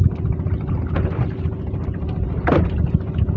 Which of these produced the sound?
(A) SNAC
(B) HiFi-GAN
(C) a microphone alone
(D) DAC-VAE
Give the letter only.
C